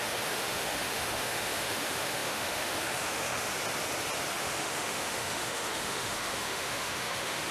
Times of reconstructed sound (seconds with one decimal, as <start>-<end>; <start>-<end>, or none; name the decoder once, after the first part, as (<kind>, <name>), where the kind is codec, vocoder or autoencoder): 0.0-3.5 (autoencoder, DAC-VAE); 4.4-7.5